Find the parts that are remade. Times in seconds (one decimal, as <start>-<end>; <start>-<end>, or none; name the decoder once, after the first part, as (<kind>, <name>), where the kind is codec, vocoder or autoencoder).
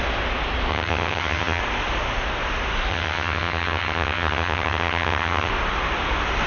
0.7-1.6 (vocoder, HiFi-GAN); 2.9-5.5